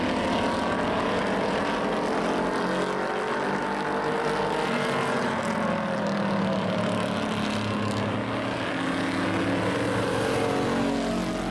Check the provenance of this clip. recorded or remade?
recorded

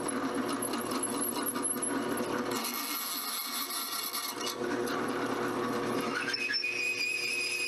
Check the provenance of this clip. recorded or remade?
recorded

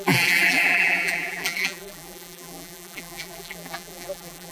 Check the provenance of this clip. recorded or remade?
remade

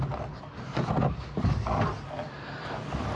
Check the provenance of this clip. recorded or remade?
remade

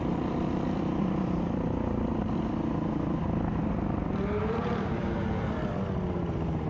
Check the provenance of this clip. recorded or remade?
remade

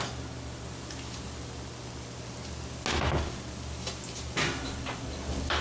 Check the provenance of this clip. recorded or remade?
recorded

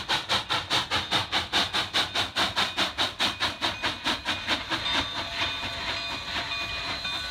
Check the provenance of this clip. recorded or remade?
recorded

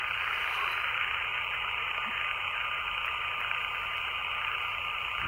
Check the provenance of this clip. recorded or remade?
recorded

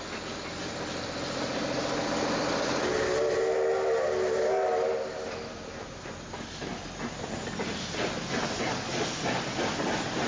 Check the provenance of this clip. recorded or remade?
recorded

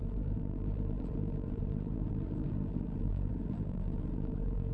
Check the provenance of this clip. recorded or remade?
remade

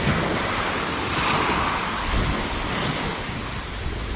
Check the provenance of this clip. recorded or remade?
remade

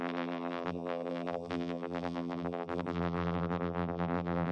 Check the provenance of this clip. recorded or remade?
remade